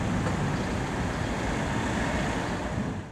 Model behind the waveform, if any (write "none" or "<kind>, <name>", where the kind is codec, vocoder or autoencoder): none